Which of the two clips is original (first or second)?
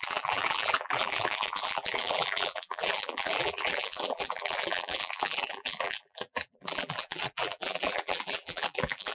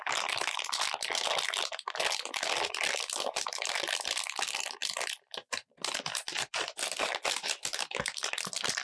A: second